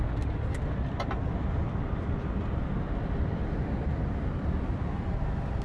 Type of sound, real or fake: real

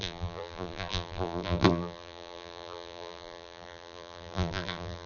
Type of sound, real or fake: fake